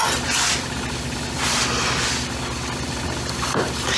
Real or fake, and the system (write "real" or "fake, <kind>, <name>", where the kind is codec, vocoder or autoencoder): fake, vocoder, BigVGAN v2